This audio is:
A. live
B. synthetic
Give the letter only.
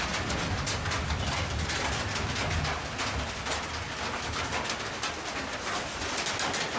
A